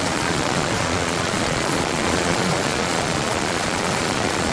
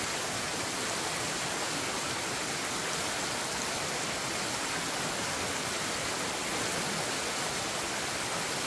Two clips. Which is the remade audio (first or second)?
first